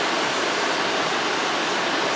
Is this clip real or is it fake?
real